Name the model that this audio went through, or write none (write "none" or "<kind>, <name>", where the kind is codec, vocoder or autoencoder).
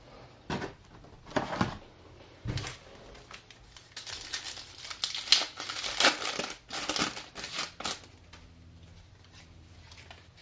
none